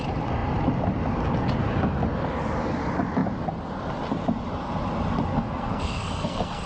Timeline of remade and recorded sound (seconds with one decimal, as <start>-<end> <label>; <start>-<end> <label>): 0.0-5.3 recorded; 5.3-6.7 remade